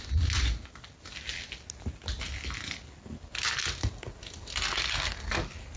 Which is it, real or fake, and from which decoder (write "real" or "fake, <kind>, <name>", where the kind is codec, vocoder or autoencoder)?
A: real